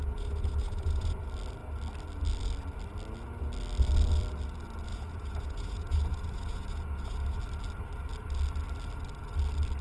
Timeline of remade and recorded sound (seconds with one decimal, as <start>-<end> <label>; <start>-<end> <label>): 0.0-1.2 remade; 1.2-4.9 recorded; 4.9-7.4 remade; 7.4-9.8 recorded